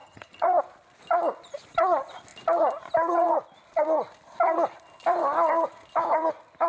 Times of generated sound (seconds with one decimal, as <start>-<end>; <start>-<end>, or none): 0.0-0.6